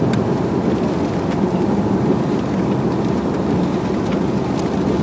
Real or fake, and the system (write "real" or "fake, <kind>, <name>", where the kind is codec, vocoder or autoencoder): fake, vocoder, BigVGAN v2